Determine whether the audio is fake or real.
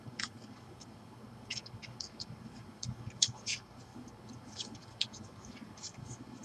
fake